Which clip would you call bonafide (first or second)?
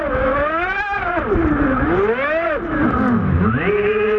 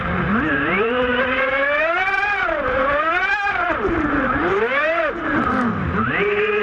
first